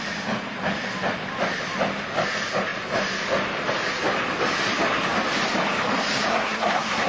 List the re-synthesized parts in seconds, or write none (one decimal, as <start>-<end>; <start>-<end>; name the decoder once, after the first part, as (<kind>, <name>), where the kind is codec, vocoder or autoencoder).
6.3-7.1 (codec, SNAC)